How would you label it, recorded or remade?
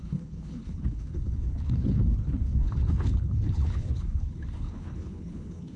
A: remade